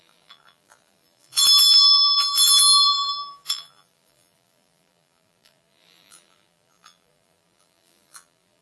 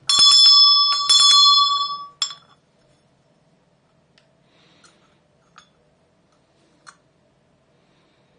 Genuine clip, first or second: second